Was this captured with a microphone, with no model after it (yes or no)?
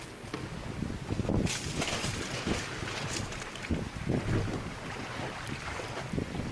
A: yes